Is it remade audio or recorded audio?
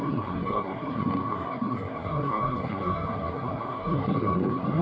remade